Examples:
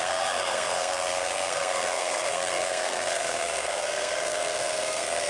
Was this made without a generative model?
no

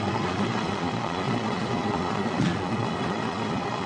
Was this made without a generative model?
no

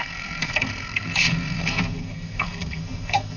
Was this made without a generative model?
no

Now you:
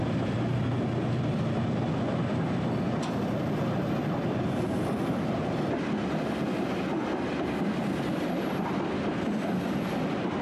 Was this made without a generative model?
yes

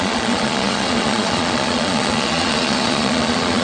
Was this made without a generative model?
no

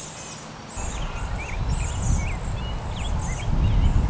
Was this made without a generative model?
yes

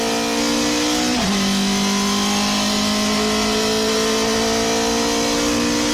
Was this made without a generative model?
yes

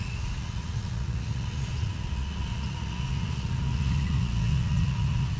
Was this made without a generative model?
no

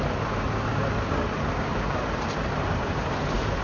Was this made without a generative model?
no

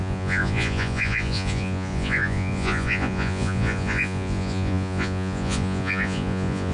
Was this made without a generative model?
no